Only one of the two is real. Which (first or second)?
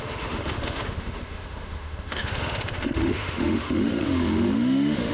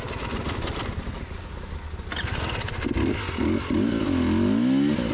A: second